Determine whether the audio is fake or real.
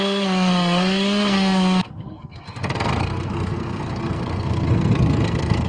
fake